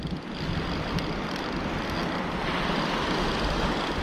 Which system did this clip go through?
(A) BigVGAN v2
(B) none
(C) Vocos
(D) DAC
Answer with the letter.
B